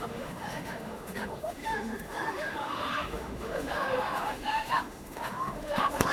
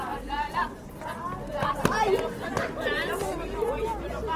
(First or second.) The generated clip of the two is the first